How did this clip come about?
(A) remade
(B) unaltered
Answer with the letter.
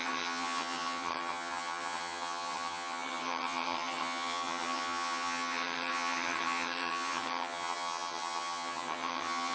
A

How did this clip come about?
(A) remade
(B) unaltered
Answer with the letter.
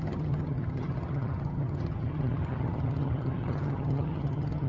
A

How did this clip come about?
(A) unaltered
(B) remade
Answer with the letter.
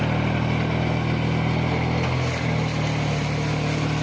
A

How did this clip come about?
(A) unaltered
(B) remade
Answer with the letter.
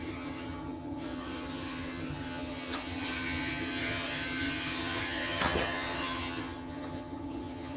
B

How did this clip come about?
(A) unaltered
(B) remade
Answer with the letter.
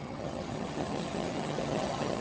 B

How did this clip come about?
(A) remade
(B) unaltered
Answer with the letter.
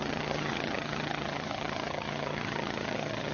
A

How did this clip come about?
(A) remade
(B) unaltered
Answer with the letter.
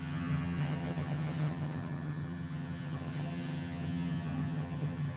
A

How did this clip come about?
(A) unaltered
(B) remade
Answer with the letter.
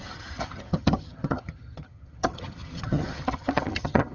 B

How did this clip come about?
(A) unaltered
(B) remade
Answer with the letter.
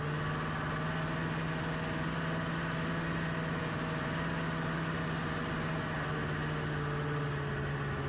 A